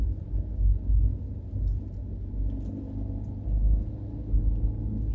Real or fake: real